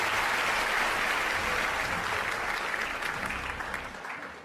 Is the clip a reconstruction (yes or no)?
no